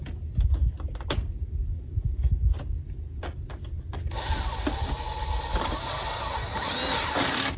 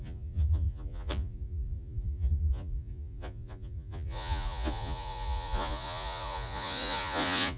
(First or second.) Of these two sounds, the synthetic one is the second